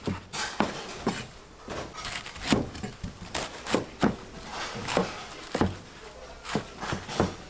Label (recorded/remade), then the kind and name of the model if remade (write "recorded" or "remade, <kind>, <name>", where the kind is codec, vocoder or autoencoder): recorded